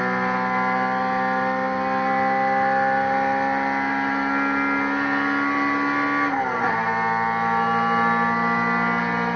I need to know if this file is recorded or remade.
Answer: recorded